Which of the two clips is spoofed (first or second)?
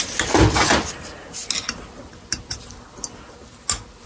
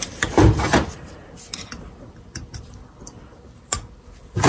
second